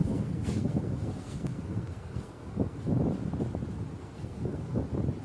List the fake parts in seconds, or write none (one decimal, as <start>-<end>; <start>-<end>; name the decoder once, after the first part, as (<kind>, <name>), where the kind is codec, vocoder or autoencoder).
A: 0.0-2.9 (codec, SNAC); 4.0-4.8